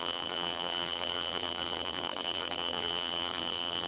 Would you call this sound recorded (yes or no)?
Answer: no